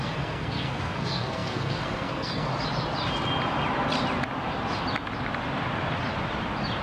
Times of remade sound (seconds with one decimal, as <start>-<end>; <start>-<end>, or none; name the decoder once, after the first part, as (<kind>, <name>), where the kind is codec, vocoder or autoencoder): 0.0-2.5 (codec, SNAC)